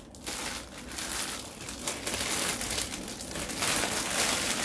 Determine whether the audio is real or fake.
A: real